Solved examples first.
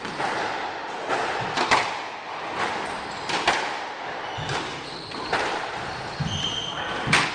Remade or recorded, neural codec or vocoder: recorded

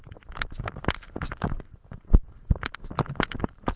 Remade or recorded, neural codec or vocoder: recorded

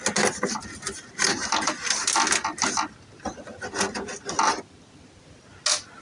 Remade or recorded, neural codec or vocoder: recorded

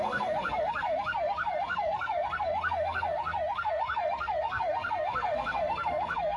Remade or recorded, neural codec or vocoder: remade, codec, SNAC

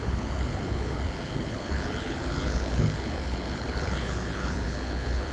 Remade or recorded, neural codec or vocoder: remade, codec, HILCodec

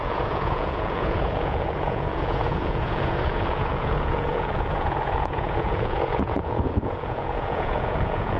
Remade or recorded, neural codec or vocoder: remade, vocoder, Vocos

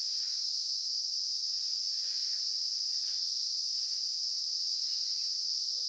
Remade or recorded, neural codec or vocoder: recorded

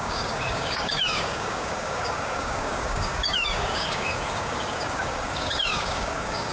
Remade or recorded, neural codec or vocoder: remade, codec, DAC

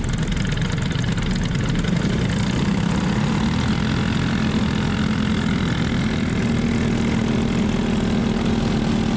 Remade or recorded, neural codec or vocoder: recorded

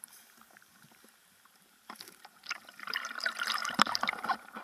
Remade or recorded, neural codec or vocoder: remade, vocoder, BigVGAN v2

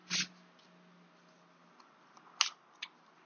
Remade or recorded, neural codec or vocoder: recorded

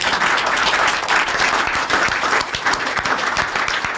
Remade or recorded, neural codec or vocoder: remade, vocoder, BigVGAN v2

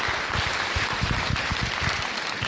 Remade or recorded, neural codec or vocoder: recorded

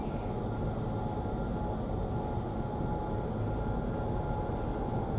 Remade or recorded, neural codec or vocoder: recorded